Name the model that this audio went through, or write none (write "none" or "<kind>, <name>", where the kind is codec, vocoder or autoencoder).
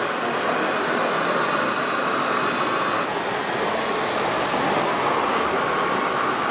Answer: none